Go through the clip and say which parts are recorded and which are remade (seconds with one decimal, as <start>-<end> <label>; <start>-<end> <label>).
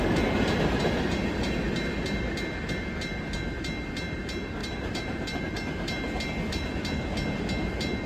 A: 0.0-4.6 recorded; 4.6-5.4 remade; 5.4-8.1 recorded